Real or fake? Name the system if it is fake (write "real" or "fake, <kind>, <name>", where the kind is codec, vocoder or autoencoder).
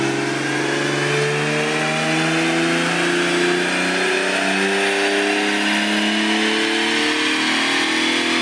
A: real